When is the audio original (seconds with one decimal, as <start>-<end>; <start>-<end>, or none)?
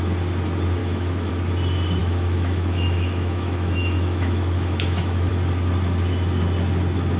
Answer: 0.0-0.8; 1.3-2.0; 5.3-7.2